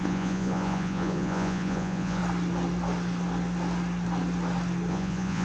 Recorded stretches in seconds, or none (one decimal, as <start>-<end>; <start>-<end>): 2.2-4.9